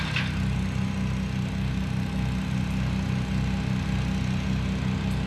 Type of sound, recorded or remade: recorded